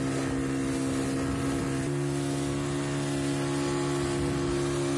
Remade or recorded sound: recorded